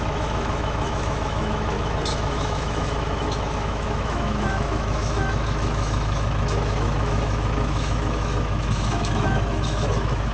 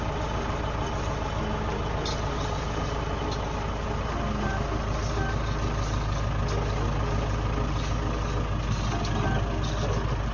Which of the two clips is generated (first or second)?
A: first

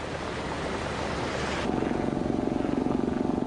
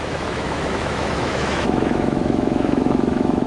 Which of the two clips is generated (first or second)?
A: second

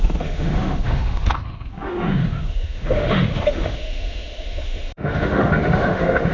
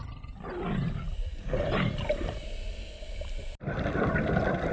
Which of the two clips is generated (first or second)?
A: first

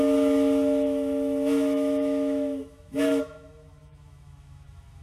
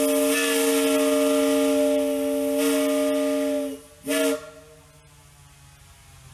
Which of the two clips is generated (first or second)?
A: first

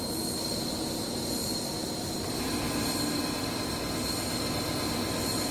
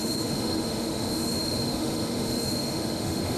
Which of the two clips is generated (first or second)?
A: second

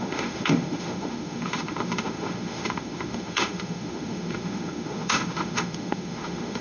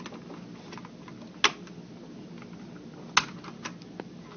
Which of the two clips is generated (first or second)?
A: first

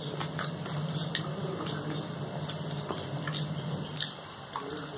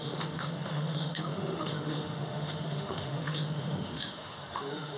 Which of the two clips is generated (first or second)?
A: second